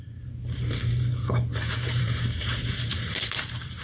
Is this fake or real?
fake